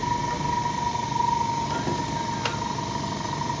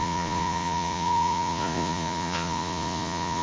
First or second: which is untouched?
first